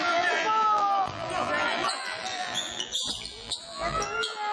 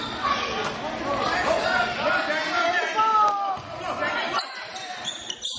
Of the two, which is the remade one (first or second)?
first